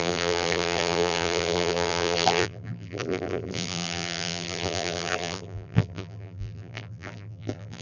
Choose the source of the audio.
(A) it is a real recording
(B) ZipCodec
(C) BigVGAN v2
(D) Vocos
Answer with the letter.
C